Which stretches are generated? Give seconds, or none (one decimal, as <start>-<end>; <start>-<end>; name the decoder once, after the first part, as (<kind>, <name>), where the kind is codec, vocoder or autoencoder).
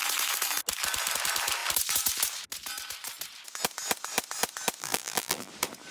4.8-5.5 (vocoder, BigVGAN v2)